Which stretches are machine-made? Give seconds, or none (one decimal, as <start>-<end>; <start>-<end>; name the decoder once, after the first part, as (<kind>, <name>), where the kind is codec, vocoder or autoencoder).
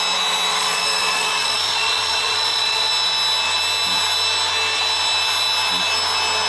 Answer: 0.5-2.9 (vocoder, Vocos)